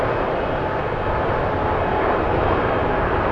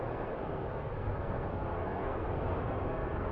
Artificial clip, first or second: second